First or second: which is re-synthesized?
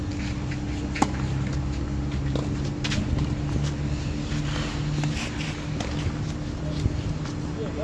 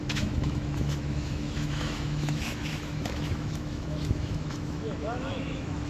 second